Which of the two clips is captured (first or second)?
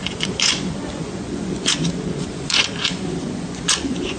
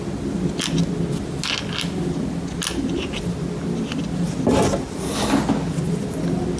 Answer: second